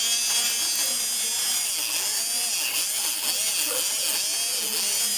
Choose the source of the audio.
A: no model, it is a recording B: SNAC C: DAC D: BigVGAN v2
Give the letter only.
A